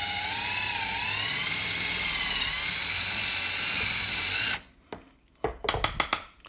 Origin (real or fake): real